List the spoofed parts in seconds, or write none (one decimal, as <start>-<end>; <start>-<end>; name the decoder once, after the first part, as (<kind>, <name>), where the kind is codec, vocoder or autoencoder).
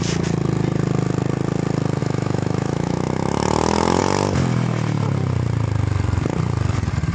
2.0-4.0 (autoencoder, DAC-VAE)